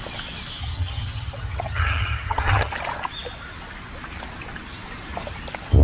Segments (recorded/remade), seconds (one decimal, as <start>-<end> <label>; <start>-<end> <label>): 0.0-0.6 recorded; 0.6-2.7 remade; 2.7-5.8 recorded